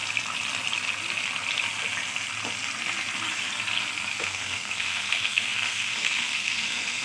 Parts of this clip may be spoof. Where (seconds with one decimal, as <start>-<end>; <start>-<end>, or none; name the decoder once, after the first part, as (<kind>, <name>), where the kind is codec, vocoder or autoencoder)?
4.2-7.0 (codec, SNAC)